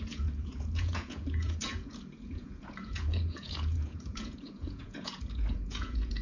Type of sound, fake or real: fake